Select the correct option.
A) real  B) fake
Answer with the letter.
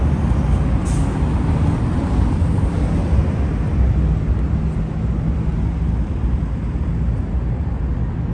A